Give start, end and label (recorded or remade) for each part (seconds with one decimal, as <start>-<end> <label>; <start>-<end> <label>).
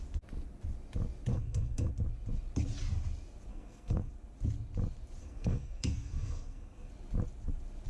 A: 0.0-1.3 recorded; 1.3-1.9 remade; 1.9-3.5 recorded; 3.5-4.1 remade; 4.1-5.2 recorded; 5.2-6.9 remade; 6.9-7.9 recorded